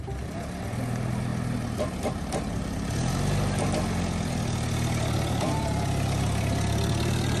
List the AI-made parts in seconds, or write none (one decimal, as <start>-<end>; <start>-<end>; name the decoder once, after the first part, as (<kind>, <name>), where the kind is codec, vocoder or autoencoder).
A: none